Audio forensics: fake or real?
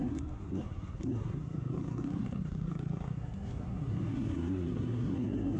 fake